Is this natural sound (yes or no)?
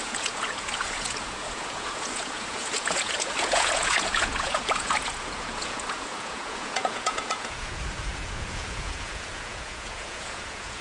no